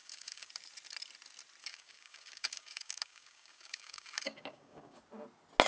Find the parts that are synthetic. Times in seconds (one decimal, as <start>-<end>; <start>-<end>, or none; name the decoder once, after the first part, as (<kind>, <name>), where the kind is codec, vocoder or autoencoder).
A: 0.0-0.5 (codec, DAC); 1.6-5.0